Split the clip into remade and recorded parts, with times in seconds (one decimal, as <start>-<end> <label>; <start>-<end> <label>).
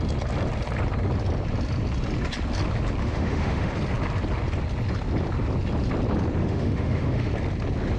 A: 0.0-3.0 recorded; 3.0-3.7 remade; 3.7-6.4 recorded; 6.4-7.3 remade; 7.3-8.0 recorded